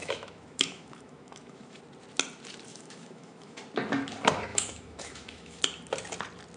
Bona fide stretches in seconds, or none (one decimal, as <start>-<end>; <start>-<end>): 1.8-2.7; 3.6-4.5; 5.6-6.6